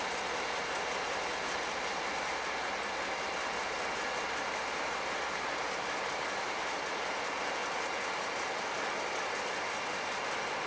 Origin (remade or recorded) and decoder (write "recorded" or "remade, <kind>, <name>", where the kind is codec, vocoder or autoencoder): recorded